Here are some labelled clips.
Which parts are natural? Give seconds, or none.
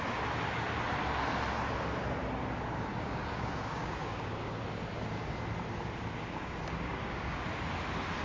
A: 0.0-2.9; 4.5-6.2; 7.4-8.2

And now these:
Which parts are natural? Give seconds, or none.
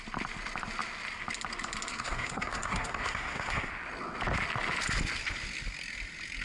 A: 0.0-1.9; 3.7-6.4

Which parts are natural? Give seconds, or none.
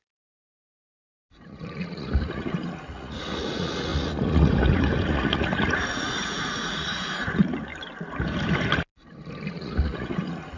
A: 7.7-9.5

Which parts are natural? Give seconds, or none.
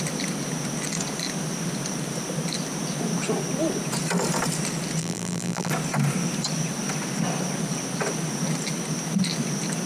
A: 0.0-5.0; 5.7-9.9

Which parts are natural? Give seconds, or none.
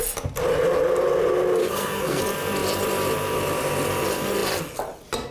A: 0.0-1.6; 2.2-5.3